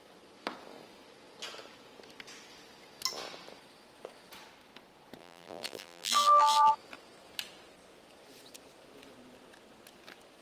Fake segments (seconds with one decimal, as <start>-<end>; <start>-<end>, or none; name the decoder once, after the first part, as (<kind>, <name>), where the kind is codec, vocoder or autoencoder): 5.2-6.7 (vocoder, BigVGAN v2)